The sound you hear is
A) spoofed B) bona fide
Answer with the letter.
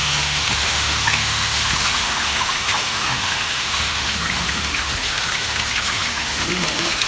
A